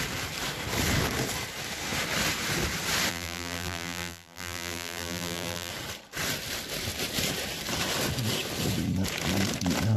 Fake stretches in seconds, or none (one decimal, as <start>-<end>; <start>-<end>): 3.1-5.7